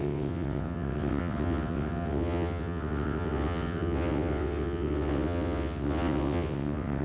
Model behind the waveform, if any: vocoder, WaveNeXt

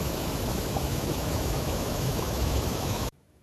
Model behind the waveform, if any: autoencoder, DAC-VAE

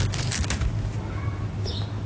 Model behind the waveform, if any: none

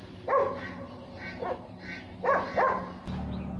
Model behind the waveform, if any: none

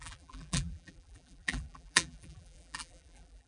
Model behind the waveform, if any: vocoder, BigVGAN v2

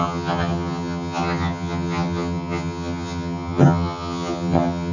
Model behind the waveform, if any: vocoder, HiFi-GAN